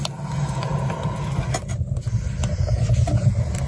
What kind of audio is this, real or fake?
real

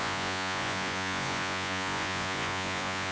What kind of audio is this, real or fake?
fake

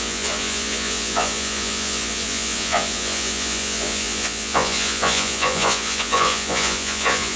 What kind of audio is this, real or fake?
fake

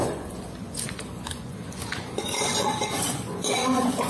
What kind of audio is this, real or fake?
fake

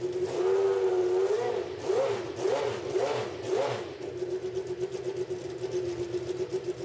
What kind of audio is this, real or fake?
real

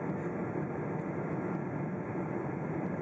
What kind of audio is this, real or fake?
real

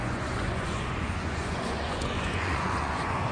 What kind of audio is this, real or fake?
fake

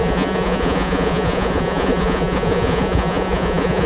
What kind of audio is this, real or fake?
fake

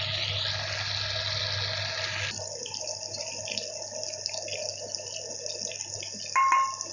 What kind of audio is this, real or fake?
real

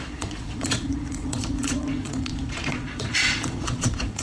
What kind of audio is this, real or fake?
fake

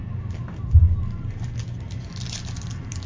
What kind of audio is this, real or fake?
real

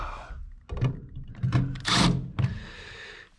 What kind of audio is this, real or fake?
real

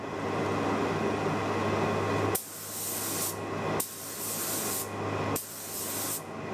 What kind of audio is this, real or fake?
real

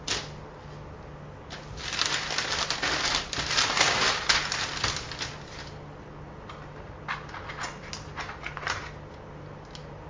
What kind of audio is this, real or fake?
real